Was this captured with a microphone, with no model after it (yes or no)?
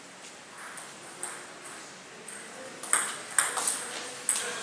yes